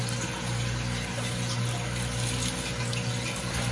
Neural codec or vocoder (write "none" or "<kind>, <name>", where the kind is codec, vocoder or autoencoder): none